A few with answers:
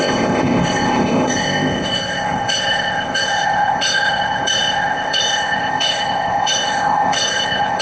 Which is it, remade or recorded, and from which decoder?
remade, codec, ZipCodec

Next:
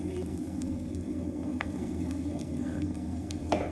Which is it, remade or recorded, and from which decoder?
remade, codec, SNAC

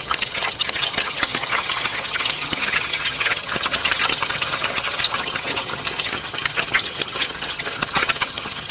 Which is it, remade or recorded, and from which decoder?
remade, vocoder, HiFi-GAN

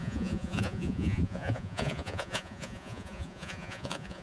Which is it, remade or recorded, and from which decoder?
remade, vocoder, Vocos